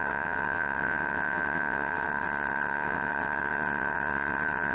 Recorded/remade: remade